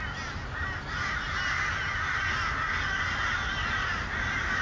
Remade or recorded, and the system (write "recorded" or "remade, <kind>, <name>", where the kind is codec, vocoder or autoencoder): recorded